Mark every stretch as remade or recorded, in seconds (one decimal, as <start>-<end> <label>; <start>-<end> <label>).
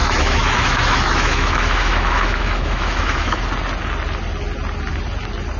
0.0-3.4 remade; 3.4-5.6 recorded